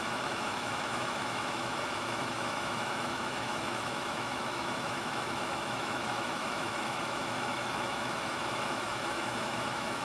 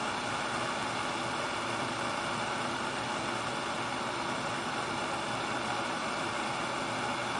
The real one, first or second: second